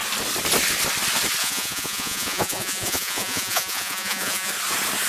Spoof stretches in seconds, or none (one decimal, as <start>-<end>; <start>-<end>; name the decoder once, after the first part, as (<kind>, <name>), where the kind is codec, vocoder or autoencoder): 1.4-4.5 (vocoder, Vocos)